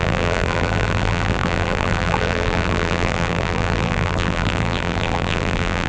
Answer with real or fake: fake